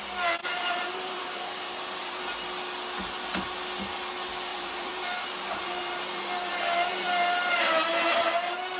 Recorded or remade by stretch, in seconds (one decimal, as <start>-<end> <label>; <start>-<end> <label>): 0.0-0.4 recorded; 0.4-2.2 remade; 2.2-4.5 recorded; 4.5-6.5 remade; 6.5-6.9 recorded; 6.9-7.7 remade; 7.7-8.8 recorded